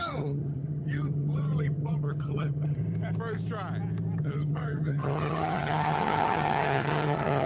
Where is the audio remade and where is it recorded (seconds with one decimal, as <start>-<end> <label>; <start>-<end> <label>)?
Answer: 0.0-2.8 remade; 2.8-4.2 recorded; 4.2-7.5 remade

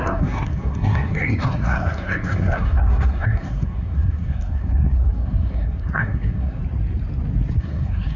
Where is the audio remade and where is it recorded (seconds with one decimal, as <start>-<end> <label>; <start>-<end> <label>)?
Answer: 0.0-6.6 remade; 6.6-7.6 recorded; 7.6-8.2 remade

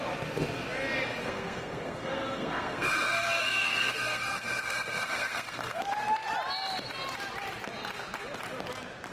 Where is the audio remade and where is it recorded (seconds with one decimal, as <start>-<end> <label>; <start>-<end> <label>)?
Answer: 0.0-1.2 recorded; 1.2-5.8 remade; 5.8-9.1 recorded

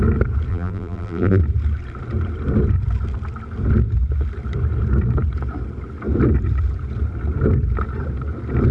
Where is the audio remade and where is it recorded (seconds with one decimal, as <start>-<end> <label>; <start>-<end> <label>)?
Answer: 0.0-0.5 recorded; 0.5-1.4 remade; 1.4-8.7 recorded

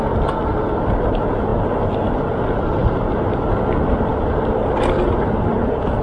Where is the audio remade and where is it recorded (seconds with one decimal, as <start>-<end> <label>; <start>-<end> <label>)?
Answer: 0.0-6.0 recorded